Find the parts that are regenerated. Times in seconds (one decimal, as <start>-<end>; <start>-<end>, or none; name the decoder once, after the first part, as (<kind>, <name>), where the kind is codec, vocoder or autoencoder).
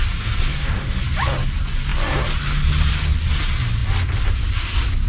0.5-1.0 (autoencoder, DAC-VAE)